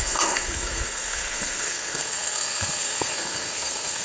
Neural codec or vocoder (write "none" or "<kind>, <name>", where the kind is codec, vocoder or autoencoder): codec, SNAC